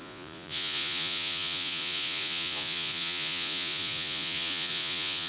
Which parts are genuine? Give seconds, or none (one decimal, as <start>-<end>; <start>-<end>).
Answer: none